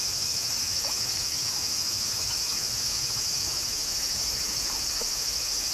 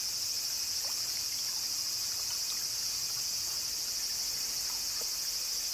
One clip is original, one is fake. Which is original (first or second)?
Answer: second